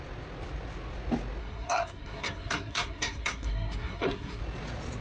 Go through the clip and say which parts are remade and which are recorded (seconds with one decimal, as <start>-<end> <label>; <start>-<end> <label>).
0.0-1.4 recorded; 1.4-4.4 remade; 4.4-5.0 recorded